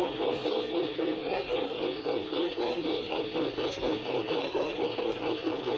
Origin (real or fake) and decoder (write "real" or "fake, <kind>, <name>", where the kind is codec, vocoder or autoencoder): fake, codec, SNAC